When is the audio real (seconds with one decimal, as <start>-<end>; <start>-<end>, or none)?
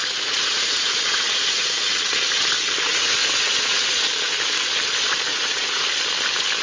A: 1.8-2.9; 4.0-5.3; 5.9-6.6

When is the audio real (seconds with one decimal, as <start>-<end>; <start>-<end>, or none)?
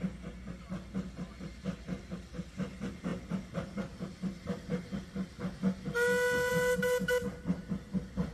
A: 0.0-8.3